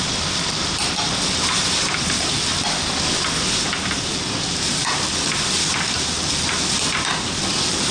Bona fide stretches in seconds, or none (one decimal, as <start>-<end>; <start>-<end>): 0.0-7.9